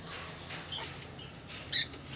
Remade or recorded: recorded